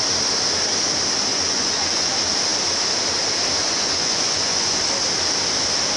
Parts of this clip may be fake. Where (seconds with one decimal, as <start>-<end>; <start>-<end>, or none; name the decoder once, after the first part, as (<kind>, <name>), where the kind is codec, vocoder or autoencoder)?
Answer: 1.3-2.1 (vocoder, Vocos); 3.6-4.8